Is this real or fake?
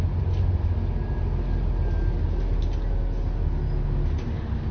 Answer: real